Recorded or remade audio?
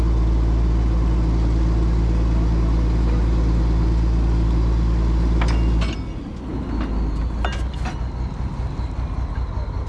recorded